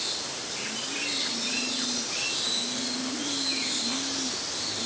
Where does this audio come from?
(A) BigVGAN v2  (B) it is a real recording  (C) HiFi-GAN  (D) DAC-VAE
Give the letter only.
B